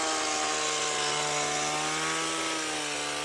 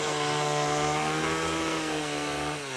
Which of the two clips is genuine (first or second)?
first